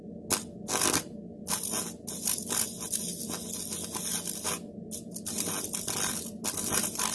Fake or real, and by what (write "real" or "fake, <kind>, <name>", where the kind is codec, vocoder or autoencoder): real